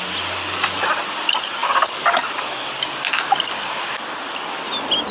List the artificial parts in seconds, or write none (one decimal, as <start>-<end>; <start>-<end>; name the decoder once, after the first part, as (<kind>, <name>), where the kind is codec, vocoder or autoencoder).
none